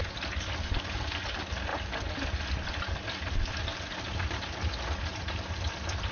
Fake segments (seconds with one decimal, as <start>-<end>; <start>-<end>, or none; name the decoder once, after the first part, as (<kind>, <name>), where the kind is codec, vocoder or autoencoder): none